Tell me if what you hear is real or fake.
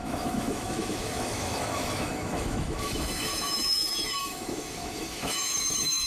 fake